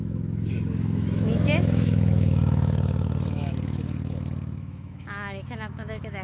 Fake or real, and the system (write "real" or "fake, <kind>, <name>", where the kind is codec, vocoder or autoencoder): fake, autoencoder, DAC-VAE